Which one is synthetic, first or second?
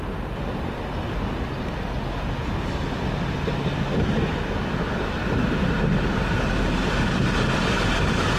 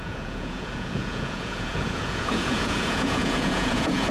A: second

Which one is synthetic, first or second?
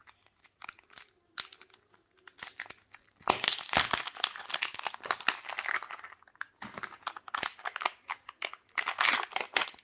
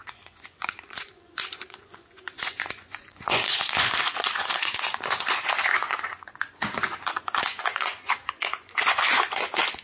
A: second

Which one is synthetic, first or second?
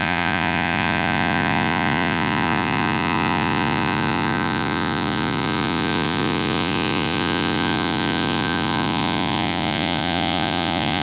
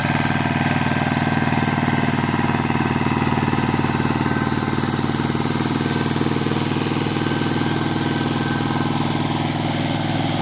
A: first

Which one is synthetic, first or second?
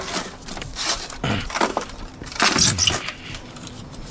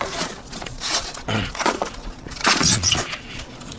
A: second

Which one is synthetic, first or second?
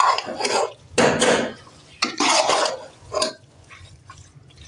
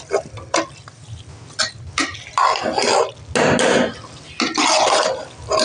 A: first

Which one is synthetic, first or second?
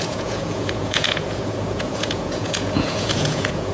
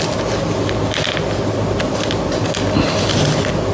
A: first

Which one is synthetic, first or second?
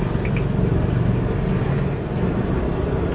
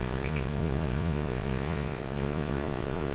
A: second